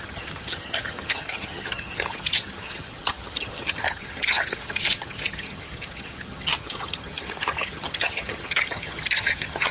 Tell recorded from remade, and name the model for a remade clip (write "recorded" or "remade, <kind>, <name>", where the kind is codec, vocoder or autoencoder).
remade, vocoder, HiFi-GAN